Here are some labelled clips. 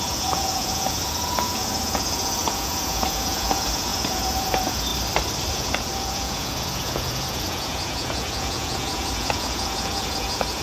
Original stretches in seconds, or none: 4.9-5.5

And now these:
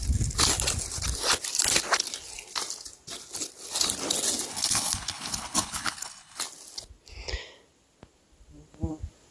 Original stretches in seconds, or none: 0.0-4.5; 6.4-9.3

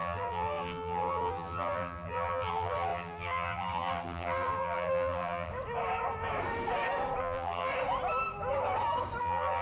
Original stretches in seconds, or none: 5.5-7.2; 7.7-9.2